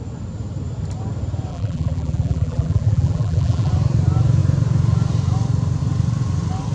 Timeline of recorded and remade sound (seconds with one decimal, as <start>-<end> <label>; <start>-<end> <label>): 0.0-1.5 recorded; 1.5-3.7 remade; 3.7-6.7 recorded